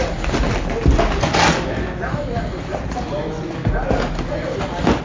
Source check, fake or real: real